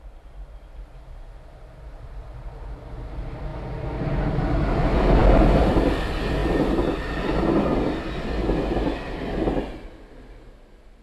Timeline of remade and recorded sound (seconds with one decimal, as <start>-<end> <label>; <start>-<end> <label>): 0.0-11.0 recorded